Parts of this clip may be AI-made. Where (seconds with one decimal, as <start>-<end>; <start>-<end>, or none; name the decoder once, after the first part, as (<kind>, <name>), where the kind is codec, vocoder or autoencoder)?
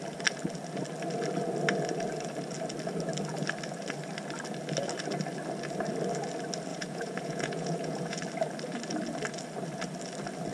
6.7-8.2 (vocoder, Vocos)